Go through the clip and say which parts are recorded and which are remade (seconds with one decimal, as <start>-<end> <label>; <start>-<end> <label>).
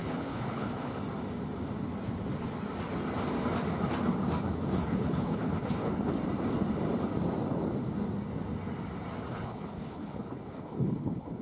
0.0-0.9 remade; 0.9-4.7 recorded; 4.7-6.1 remade; 6.1-9.3 recorded; 9.3-11.4 remade